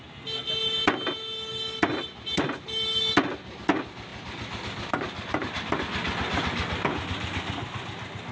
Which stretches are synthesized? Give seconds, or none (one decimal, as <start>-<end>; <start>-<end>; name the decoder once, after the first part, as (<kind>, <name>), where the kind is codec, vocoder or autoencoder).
none